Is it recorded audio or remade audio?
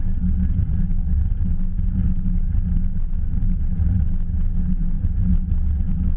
recorded